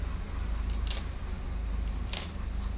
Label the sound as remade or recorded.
recorded